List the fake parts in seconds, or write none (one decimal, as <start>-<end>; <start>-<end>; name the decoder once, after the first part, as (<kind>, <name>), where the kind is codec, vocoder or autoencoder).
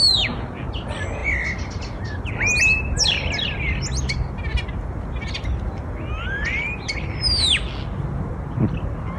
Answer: 1.2-2.3 (vocoder, BigVGAN v2)